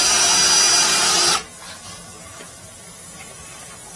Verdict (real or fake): real